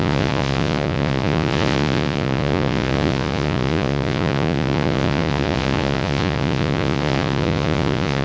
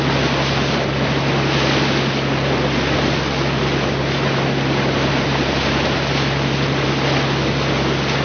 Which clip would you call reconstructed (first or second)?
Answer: first